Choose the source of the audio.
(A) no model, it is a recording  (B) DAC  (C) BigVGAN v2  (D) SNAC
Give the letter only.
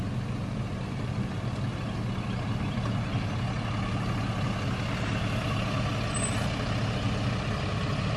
A